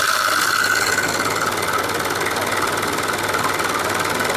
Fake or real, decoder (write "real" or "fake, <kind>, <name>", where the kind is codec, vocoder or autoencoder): real